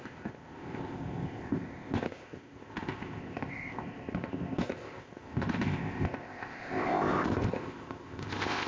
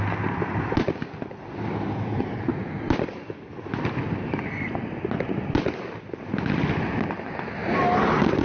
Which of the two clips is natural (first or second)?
second